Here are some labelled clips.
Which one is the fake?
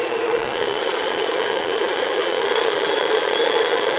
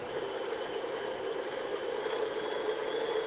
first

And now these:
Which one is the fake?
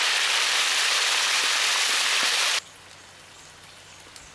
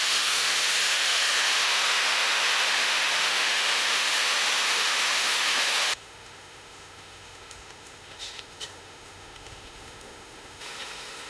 second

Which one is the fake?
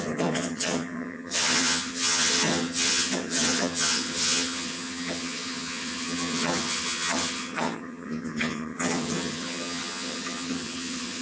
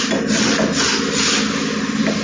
first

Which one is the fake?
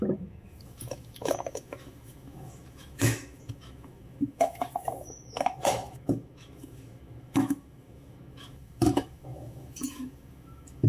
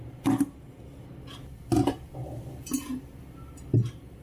first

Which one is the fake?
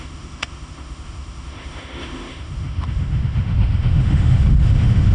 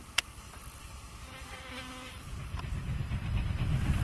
first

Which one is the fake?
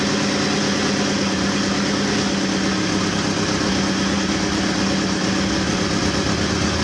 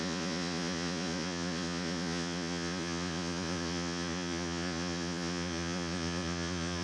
second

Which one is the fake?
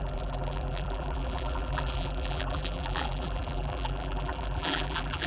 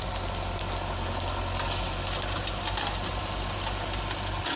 first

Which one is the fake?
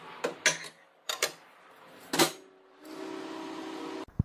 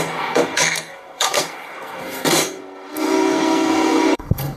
second